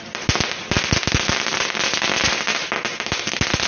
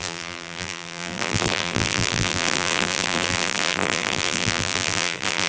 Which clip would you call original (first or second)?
first